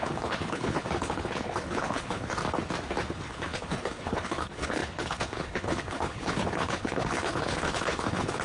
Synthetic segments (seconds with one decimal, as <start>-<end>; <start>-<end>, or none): 0.0-2.4; 3.1-8.4